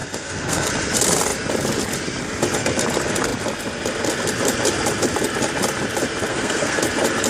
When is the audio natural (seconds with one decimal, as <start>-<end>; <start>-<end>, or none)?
0.7-6.3; 6.8-7.3